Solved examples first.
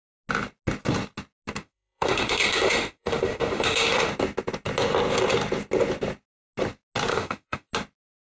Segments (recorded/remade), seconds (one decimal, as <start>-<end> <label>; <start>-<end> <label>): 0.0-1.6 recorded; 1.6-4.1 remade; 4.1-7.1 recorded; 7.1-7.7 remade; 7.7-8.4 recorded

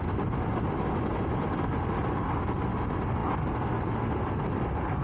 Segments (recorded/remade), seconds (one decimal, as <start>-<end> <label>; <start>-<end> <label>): 0.0-5.0 recorded

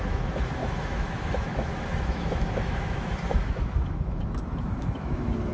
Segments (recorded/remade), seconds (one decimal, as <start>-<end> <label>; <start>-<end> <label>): 0.0-5.5 remade

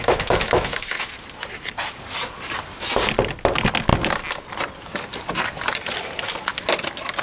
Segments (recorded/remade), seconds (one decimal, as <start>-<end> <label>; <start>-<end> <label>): 0.0-1.1 remade; 1.1-7.2 recorded

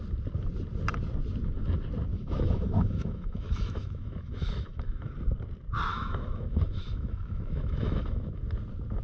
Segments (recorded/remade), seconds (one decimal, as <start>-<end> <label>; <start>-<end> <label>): 0.0-2.1 recorded; 2.1-5.1 remade; 5.1-5.9 recorded; 5.9-8.4 remade; 8.4-9.0 recorded

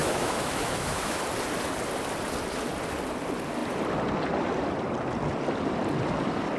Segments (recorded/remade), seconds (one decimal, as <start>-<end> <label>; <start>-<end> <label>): 0.0-1.2 remade; 1.2-6.6 recorded

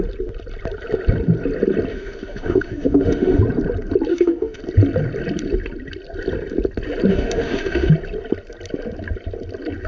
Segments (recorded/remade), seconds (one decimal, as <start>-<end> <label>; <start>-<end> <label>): 0.0-1.9 recorded; 1.9-3.4 remade; 3.4-4.1 recorded; 4.1-4.6 remade; 4.6-7.1 recorded; 7.1-7.9 remade; 7.9-9.9 recorded